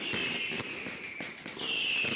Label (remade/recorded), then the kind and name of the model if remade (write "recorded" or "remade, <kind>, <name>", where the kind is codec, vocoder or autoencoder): recorded